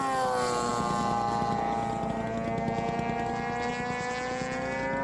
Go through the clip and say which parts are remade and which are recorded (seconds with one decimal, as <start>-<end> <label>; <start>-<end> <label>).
0.0-5.0 recorded